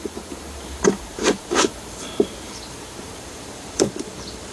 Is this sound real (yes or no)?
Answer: no